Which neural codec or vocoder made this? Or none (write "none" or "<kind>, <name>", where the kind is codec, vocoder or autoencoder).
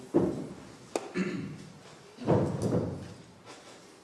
none